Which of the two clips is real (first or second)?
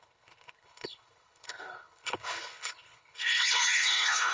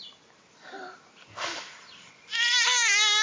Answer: second